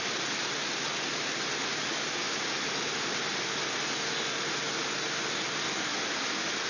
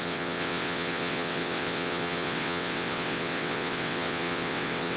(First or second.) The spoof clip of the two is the second